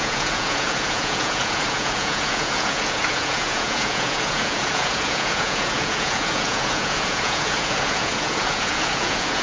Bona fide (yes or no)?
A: no